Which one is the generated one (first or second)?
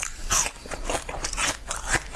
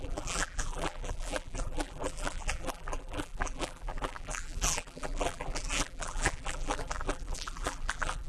second